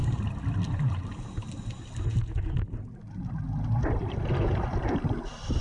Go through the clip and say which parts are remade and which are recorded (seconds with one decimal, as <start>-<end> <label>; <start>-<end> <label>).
0.0-5.6 recorded